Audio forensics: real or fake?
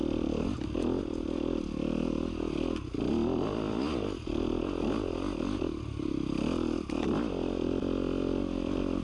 real